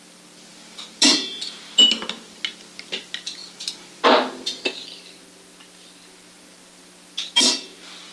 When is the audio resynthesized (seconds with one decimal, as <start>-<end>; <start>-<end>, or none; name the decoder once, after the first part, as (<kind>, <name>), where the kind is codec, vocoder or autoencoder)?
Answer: none